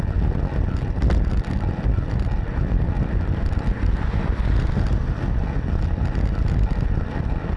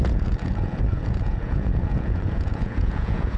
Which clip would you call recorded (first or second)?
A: first